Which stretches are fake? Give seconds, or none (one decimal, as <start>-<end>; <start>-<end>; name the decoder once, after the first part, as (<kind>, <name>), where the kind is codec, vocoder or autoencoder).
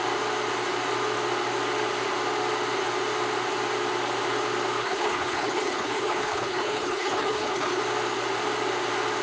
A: 4.8-7.8 (codec, HILCodec)